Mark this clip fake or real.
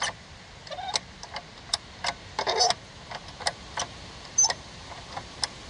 real